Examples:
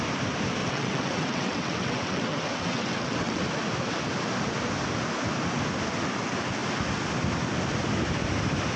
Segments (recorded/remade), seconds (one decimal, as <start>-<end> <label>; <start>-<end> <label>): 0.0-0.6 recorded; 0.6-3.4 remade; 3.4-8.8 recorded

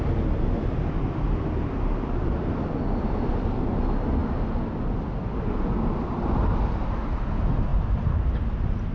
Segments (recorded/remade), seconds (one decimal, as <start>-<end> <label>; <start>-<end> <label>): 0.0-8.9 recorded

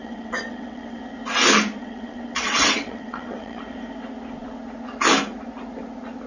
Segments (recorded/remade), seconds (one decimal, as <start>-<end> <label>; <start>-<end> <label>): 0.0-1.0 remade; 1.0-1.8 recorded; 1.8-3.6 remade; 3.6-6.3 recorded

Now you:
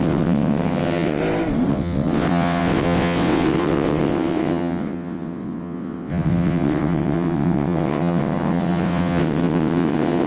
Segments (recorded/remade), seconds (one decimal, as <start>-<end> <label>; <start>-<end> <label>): 0.0-1.2 remade; 1.2-1.7 recorded; 1.7-10.3 remade